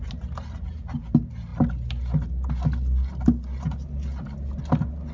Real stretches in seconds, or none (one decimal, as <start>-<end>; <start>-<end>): 0.0-5.1

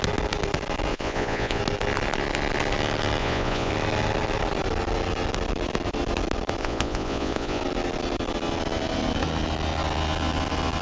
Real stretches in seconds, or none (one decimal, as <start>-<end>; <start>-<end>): 0.0-0.9; 1.6-3.2; 3.7-6.6; 7.6-10.8

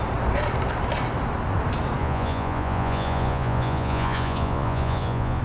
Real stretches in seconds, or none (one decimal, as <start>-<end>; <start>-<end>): 0.0-2.0

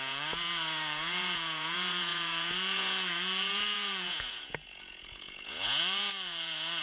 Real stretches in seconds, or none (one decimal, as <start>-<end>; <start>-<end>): none

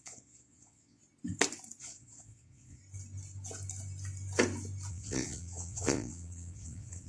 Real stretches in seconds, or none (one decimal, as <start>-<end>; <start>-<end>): 1.0-1.8; 2.8-4.9

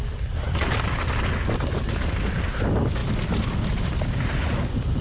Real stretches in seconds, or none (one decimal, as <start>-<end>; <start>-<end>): 0.0-5.0

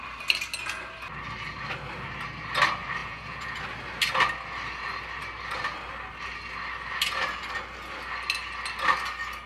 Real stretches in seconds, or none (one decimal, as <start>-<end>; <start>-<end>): 0.0-3.0; 3.6-9.5